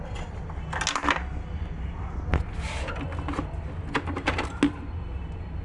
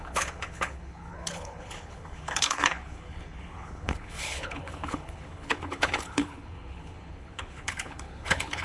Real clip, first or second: first